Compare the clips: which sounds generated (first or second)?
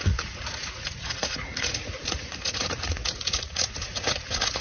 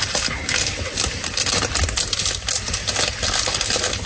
first